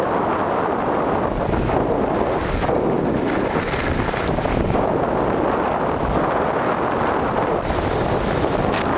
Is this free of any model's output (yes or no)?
yes